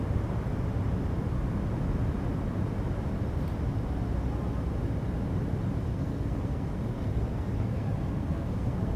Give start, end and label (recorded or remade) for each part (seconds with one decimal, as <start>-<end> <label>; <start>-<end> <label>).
0.0-5.9 recorded; 5.9-9.0 remade